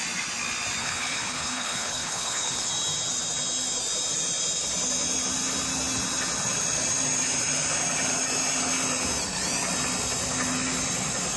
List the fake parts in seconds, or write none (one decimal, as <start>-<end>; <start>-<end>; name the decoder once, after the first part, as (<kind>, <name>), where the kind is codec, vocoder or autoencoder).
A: 0.8-2.7 (codec, HILCodec)